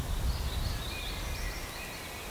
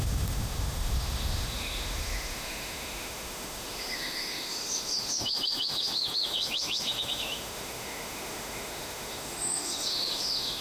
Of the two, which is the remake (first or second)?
second